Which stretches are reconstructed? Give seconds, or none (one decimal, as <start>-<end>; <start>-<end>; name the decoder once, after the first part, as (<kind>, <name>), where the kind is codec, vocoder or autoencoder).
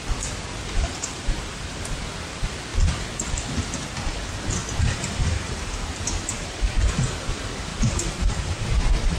0.9-2.0 (vocoder, BigVGAN v2); 4.6-6.7; 7.7-8.7